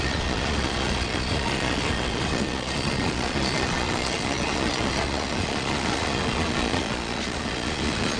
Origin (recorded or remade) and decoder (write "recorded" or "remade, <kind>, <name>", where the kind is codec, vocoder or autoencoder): remade, vocoder, Vocos